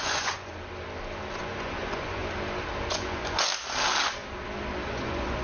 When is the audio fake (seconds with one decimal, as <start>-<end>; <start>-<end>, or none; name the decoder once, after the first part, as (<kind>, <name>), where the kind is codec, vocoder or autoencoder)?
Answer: 0.0-0.5 (vocoder, Vocos); 1.4-2.2; 2.9-3.5; 4.9-5.4